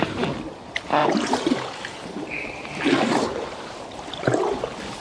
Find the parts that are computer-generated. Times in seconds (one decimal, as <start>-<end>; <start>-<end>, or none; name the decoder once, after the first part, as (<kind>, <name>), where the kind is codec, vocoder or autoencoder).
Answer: 1.0-4.0 (vocoder, BigVGAN v2)